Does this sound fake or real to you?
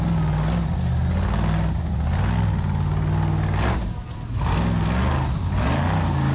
real